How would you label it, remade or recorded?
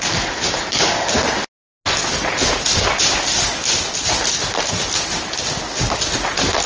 recorded